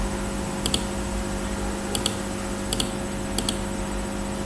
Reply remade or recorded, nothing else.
recorded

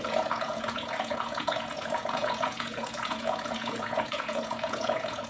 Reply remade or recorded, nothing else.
remade